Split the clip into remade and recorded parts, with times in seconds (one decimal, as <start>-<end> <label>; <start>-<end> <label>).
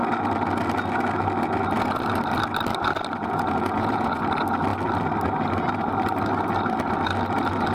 0.0-3.2 recorded; 3.2-4.2 remade; 4.2-7.7 recorded